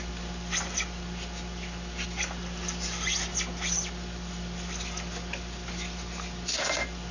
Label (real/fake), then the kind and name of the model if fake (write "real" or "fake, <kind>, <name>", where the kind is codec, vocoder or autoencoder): real